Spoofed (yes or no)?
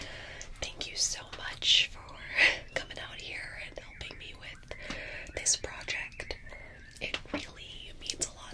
no